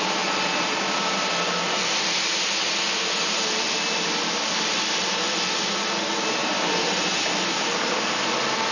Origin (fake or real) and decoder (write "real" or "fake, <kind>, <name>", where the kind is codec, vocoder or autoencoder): real